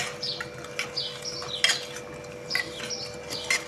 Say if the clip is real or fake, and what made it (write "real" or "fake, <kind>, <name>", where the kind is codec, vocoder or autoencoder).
real